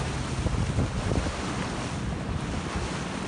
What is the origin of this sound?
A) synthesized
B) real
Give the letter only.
B